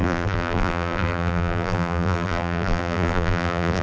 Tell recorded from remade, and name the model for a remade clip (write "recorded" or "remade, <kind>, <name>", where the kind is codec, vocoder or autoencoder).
remade, vocoder, BigVGAN v2